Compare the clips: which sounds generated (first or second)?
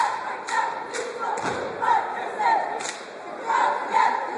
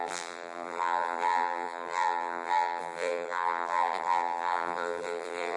second